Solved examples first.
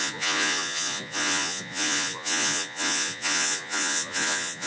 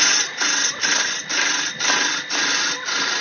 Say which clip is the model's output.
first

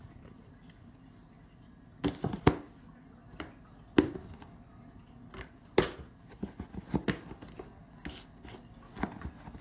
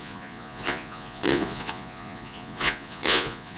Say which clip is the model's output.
second